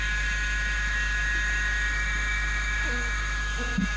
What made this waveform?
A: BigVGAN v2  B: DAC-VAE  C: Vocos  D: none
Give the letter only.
B